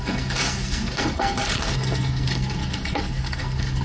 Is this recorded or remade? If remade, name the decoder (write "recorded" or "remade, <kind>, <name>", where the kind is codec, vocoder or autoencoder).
remade, codec, SNAC